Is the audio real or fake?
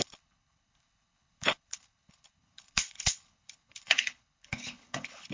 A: fake